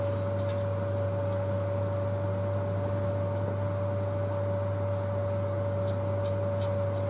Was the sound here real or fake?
real